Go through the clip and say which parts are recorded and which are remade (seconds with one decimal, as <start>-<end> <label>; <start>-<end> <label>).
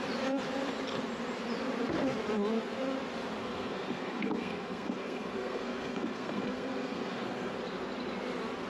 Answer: 0.0-3.4 recorded; 3.4-7.6 remade; 7.6-8.7 recorded